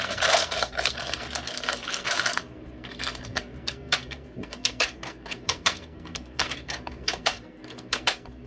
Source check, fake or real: fake